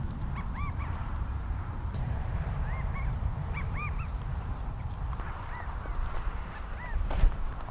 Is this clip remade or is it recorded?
remade